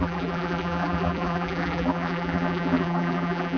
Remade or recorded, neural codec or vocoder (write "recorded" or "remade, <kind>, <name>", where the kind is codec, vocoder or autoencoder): remade, vocoder, BigVGAN v2